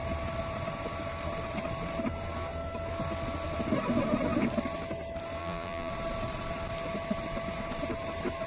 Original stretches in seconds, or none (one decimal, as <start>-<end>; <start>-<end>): 0.0-5.4; 5.9-8.5

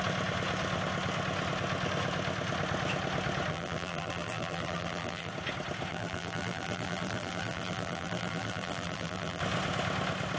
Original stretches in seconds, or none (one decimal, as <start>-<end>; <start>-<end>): 0.0-3.5; 5.3-5.9; 9.4-10.4